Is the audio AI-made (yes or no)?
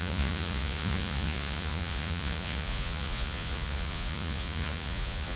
yes